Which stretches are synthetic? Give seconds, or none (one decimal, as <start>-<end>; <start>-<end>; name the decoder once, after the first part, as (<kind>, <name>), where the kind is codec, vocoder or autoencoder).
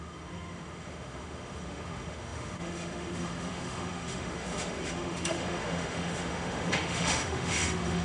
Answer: 0.0-8.0 (autoencoder, DAC-VAE)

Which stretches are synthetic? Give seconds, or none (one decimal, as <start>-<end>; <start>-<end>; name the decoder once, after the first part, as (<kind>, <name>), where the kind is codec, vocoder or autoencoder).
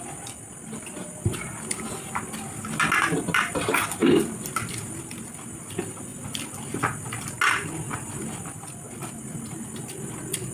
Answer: none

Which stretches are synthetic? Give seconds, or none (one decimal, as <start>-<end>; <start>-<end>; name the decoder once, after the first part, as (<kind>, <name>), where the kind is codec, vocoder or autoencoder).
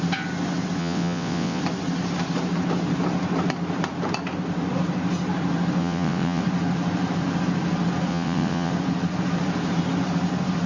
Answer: 0.8-1.6 (vocoder, WaveNeXt); 5.8-6.4; 8.1-8.7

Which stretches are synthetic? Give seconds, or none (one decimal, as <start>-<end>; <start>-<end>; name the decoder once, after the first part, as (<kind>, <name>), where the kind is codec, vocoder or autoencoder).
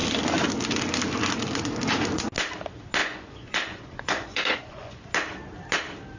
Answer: 3.0-5.0 (vocoder, Vocos)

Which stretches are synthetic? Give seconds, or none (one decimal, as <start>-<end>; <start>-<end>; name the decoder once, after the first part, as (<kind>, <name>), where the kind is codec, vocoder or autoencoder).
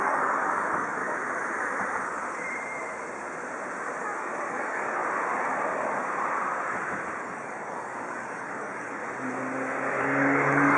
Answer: 0.0-1.0 (codec, DAC); 4.0-5.0; 7.2-9.0; 10.0-10.8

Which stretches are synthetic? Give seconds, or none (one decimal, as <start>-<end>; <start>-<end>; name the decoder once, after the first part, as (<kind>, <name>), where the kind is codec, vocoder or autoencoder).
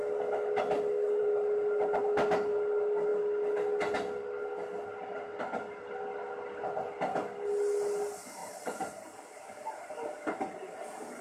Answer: 8.4-10.5 (vocoder, BigVGAN v2)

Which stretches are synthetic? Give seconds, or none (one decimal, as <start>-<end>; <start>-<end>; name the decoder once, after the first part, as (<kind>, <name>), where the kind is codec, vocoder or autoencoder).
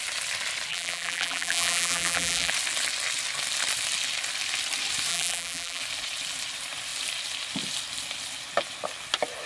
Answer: 0.7-2.5 (vocoder, BigVGAN v2); 5.1-5.8